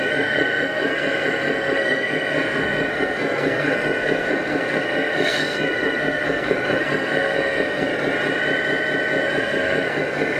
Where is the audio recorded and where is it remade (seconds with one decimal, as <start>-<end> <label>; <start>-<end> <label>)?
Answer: 0.0-7.9 remade; 7.9-9.4 recorded; 9.4-10.4 remade